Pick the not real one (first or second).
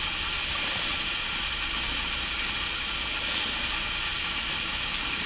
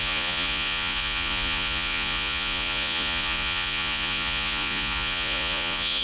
second